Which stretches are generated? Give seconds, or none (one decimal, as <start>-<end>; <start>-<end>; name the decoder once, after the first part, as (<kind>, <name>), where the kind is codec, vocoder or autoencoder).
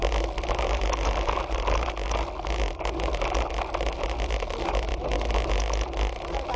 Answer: none